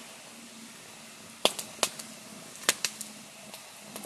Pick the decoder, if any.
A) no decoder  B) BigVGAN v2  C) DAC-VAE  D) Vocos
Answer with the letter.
A